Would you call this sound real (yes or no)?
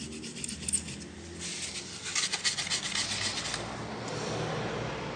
yes